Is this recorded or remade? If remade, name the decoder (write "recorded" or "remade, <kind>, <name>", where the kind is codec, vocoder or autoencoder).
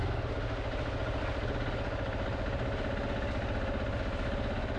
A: recorded